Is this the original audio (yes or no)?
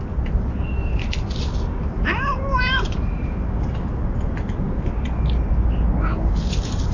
yes